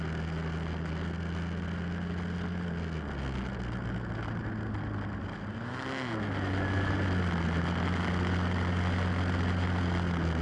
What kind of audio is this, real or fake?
real